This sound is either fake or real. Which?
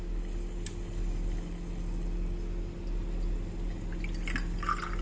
real